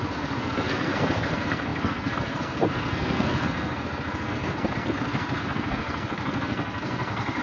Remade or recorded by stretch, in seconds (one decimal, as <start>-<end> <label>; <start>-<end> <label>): 0.0-7.4 remade